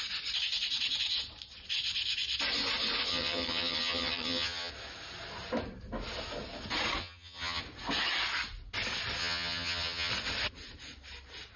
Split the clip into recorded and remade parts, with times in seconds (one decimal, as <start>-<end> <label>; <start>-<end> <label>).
0.0-3.1 recorded; 3.1-4.7 remade; 4.7-7.0 recorded; 7.0-7.6 remade; 7.6-9.2 recorded; 9.2-10.1 remade; 10.1-11.6 recorded